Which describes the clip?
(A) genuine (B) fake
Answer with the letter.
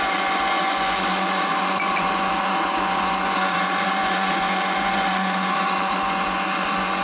B